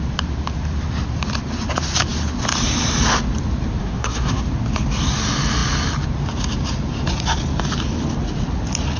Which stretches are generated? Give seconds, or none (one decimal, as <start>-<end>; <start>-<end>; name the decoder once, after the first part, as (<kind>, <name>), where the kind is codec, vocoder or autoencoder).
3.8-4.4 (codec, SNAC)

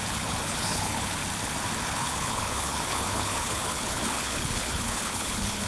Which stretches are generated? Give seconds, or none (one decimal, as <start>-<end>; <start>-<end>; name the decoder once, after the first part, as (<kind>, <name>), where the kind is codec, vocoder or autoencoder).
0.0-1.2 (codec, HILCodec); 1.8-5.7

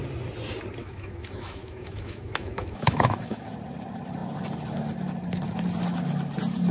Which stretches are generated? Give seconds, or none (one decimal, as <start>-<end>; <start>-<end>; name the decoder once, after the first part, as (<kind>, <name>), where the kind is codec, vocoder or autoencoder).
0.8-3.4 (autoencoder, DAC-VAE)